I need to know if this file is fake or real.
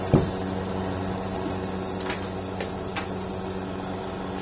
real